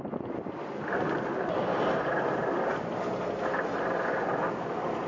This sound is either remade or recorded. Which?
recorded